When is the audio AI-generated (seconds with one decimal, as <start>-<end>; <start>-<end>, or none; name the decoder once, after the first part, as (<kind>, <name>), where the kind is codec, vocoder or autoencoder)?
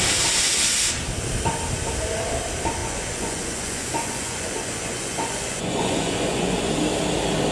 2.8-6.7 (vocoder, Vocos)